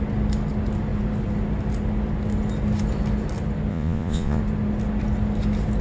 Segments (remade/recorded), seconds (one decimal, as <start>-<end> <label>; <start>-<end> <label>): 0.0-3.7 recorded; 3.7-4.4 remade; 4.4-5.8 recorded